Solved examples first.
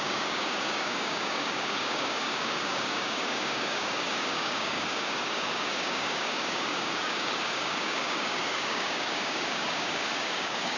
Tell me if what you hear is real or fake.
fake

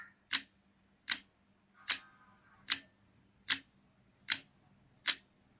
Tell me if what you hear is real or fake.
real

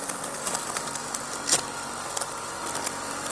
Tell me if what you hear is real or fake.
real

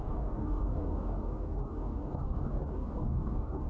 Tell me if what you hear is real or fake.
fake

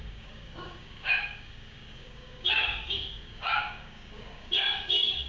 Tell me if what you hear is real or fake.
fake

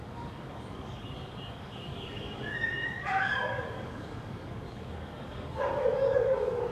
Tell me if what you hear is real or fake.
fake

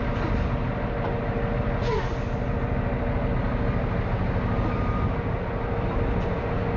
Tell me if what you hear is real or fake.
real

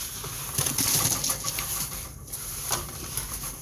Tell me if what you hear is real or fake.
real